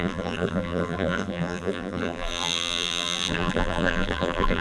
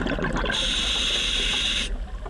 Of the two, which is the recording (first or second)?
second